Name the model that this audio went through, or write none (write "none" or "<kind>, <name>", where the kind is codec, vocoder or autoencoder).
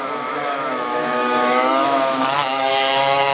autoencoder, DAC-VAE